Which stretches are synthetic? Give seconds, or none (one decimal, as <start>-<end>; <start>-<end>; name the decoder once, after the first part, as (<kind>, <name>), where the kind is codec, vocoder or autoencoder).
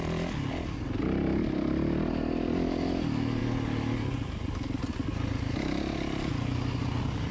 none